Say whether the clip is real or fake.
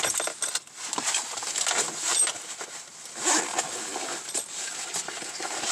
real